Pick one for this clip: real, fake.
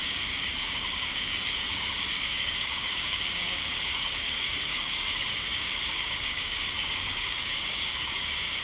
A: fake